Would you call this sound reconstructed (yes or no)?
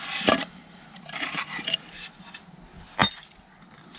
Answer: no